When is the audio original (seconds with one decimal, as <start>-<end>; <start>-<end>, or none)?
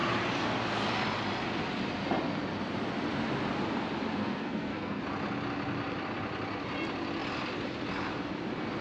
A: 0.0-4.1; 5.0-8.8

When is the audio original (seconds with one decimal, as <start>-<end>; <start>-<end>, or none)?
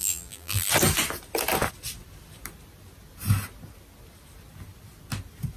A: 0.7-5.6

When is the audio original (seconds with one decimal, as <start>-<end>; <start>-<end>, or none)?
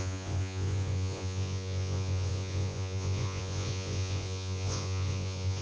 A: none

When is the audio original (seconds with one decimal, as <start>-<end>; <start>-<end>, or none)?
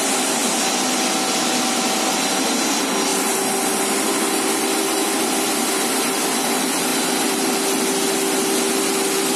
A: 0.0-9.4